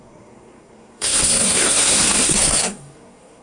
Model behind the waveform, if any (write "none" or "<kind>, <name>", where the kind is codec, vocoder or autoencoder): codec, SNAC